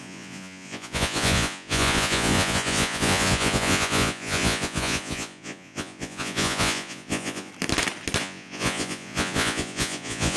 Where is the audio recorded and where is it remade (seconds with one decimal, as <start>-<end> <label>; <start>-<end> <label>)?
0.0-7.5 remade; 7.5-8.2 recorded; 8.2-10.4 remade